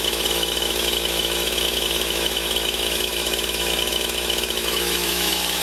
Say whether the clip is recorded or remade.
remade